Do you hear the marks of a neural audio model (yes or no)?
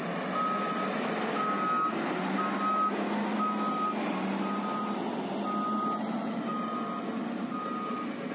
no